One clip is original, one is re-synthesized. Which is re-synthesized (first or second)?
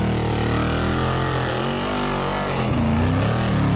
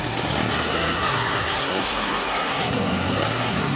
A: second